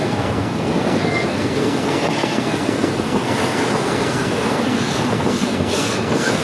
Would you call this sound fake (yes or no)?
yes